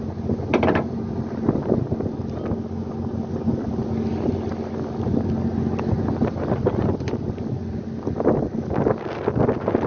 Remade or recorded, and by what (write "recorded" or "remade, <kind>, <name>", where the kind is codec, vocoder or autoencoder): recorded